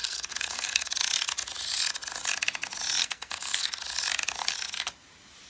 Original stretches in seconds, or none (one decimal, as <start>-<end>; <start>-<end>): 0.9-3.0; 3.8-5.5